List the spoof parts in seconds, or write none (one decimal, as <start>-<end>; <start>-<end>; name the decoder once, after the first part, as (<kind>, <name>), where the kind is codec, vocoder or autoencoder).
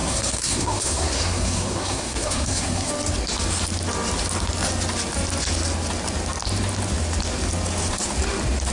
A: 0.0-2.9 (codec, SNAC)